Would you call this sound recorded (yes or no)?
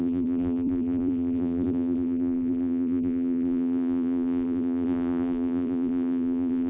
no